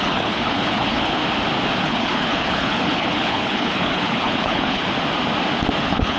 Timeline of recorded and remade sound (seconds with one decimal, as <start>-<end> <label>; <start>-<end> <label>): 0.0-1.2 remade; 1.2-1.8 recorded; 1.8-4.8 remade; 4.8-5.8 recorded; 5.8-6.2 remade

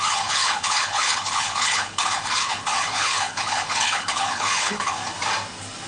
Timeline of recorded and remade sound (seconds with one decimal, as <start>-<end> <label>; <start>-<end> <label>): 0.0-5.0 remade; 5.0-5.9 recorded

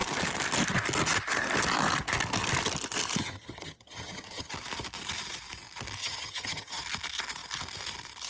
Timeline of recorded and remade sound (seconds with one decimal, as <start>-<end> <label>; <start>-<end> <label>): 0.0-3.2 recorded; 3.2-4.5 remade; 4.5-6.0 recorded; 6.0-6.8 remade; 6.8-8.3 recorded

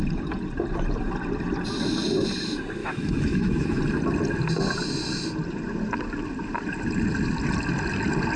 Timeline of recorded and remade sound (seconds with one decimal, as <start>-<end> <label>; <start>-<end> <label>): 0.0-2.8 recorded; 2.8-3.8 remade; 3.8-8.4 recorded